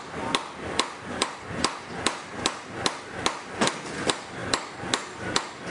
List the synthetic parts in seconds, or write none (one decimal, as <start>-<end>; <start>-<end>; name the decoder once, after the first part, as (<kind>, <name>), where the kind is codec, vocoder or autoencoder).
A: 0.0-5.7 (vocoder, BigVGAN v2)